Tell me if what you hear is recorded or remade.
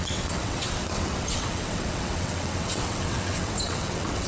remade